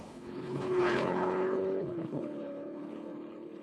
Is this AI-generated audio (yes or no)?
yes